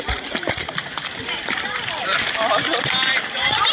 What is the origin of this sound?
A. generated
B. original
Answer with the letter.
B